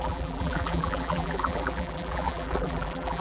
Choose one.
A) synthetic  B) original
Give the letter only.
A